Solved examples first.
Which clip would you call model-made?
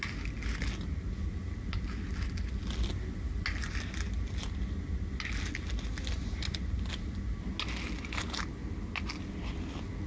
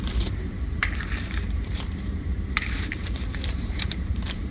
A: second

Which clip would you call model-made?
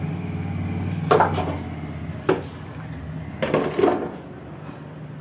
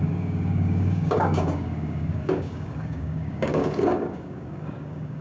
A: second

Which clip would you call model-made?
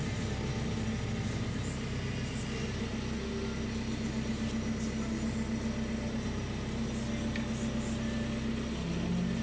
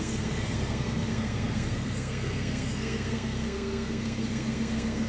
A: second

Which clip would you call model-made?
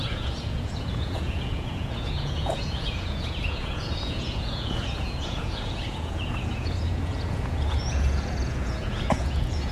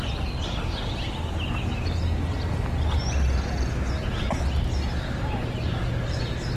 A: first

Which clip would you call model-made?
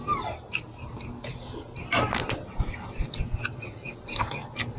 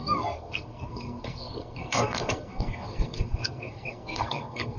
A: second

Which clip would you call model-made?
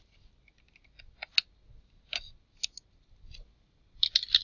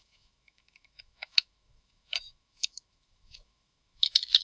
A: second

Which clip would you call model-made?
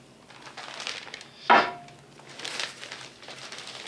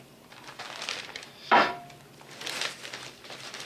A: second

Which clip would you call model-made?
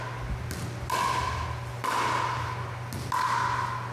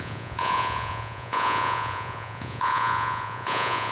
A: second